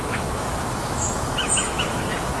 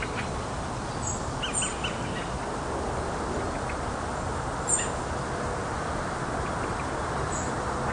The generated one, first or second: first